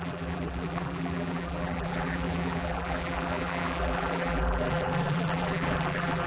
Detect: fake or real fake